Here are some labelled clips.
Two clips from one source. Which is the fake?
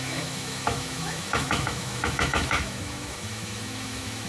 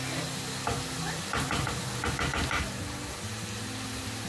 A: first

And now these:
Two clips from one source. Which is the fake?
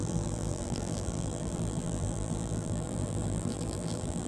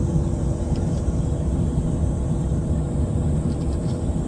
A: first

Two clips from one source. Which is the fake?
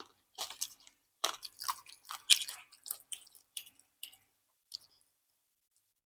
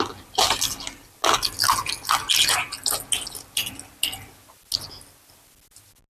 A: first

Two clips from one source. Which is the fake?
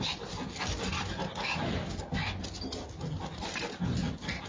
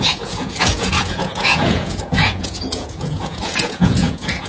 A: second